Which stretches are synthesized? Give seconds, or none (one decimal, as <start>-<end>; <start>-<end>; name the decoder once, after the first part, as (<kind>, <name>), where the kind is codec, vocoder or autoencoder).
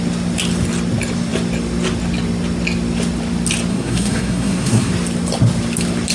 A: 3.7-4.9 (codec, SNAC)